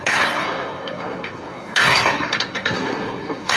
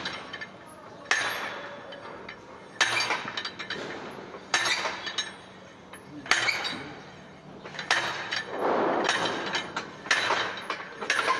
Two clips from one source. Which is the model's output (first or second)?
first